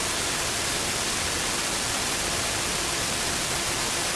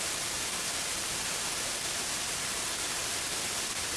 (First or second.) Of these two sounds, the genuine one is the first